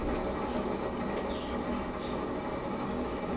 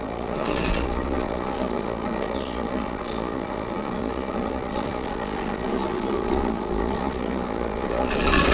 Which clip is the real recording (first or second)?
first